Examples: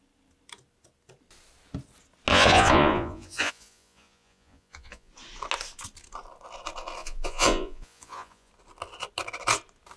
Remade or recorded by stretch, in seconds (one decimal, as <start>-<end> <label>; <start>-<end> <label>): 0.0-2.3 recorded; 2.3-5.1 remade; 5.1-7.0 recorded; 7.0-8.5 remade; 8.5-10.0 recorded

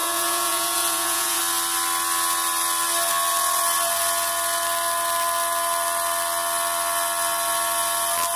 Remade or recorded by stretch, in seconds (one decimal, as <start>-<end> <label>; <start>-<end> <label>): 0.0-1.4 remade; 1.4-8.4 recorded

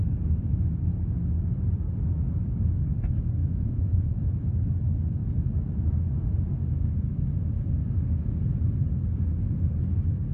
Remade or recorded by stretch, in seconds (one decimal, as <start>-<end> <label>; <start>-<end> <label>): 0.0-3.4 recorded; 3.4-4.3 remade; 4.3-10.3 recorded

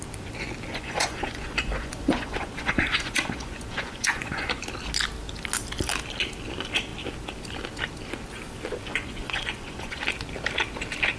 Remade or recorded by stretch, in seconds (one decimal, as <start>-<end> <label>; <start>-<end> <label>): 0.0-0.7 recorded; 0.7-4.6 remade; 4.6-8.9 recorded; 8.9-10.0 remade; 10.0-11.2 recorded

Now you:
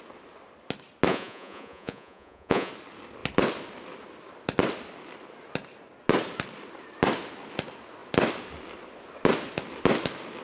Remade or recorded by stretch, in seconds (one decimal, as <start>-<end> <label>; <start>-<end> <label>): 0.0-1.1 recorded; 1.1-2.7 remade; 2.7-10.4 recorded

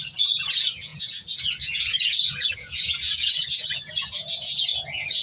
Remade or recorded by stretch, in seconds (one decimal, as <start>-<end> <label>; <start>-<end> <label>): 0.0-5.2 remade